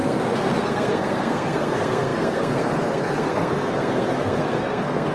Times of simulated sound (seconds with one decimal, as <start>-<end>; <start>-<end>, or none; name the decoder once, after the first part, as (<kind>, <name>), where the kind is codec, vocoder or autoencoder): 0.0-5.1 (codec, SNAC)